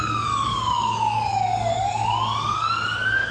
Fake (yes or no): yes